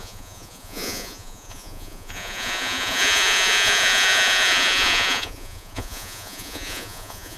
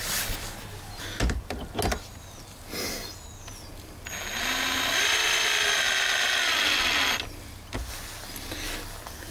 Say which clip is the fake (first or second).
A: first